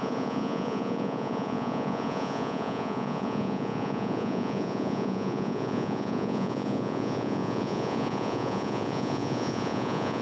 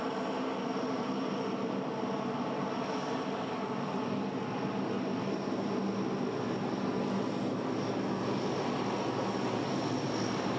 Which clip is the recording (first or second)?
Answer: second